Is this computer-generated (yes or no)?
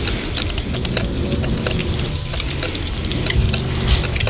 no